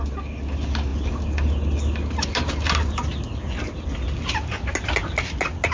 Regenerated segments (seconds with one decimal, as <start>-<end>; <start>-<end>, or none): none